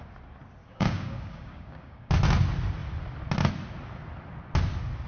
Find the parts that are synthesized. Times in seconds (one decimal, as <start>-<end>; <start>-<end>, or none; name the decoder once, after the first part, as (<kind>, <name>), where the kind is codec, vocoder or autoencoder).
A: 0.6-2.1 (codec, DAC)